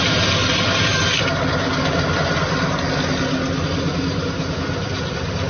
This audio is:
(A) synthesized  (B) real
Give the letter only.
B